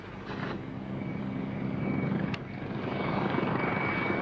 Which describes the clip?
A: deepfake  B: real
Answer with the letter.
A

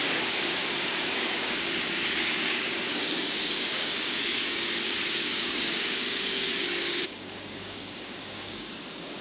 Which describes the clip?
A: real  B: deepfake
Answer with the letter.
B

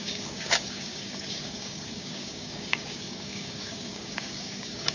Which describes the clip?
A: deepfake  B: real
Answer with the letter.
A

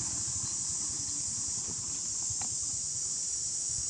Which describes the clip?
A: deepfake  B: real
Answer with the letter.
B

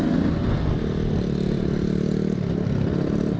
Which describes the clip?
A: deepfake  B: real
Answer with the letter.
B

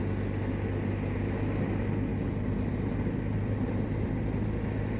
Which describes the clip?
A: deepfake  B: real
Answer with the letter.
B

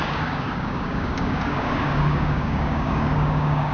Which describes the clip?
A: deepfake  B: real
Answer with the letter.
A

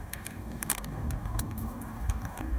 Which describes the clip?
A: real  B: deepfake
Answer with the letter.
B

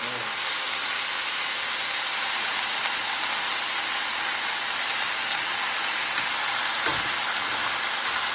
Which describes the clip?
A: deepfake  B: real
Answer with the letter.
B